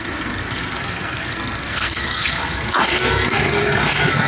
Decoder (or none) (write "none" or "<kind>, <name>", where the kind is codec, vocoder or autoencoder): codec, SNAC